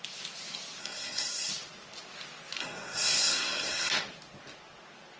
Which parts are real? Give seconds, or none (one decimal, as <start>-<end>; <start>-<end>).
0.0-0.8; 1.5-2.6; 3.9-5.2